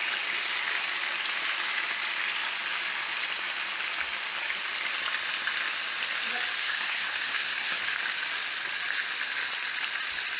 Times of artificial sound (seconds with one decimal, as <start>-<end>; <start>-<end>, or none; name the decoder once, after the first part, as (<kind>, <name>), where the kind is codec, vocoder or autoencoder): 6.6-7.8 (codec, SNAC)

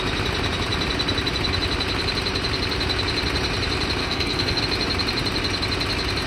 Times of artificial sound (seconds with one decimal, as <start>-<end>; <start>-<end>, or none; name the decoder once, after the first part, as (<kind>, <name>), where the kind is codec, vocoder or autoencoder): 4.0-4.6 (codec, SNAC)

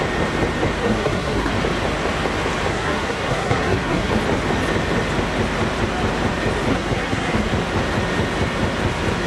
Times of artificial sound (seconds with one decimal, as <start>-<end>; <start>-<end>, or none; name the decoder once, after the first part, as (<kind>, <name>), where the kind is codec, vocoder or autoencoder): 0.8-1.5 (codec, SNAC); 2.7-4.2; 6.7-7.5

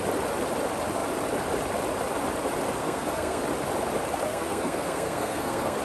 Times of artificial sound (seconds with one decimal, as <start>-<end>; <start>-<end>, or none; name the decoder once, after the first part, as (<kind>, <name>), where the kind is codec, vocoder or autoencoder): 2.8-3.4 (codec, SNAC); 4.3-5.8

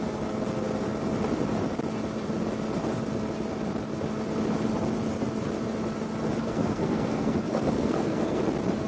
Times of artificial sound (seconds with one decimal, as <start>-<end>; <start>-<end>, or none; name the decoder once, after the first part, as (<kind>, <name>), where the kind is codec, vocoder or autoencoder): 6.4-8.4 (codec, SNAC)

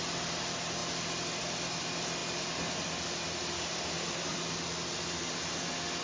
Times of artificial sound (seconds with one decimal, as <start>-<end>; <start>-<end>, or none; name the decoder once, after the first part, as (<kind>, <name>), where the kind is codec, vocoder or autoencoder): none

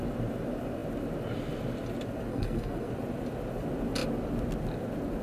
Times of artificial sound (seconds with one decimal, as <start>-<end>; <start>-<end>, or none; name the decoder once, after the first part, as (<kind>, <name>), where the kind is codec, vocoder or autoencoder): 2.3-2.9 (codec, SNAC)

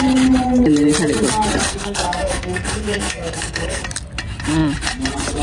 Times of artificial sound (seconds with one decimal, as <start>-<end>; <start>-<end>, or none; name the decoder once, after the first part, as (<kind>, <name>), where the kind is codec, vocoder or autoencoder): 1.7-3.8 (codec, SNAC)